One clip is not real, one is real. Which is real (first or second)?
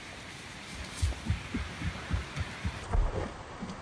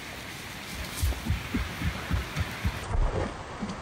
second